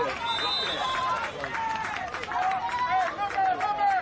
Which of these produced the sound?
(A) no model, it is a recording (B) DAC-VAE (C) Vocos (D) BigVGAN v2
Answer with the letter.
A